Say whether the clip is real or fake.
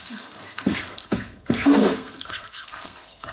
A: fake